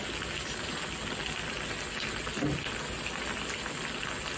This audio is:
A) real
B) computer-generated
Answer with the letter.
A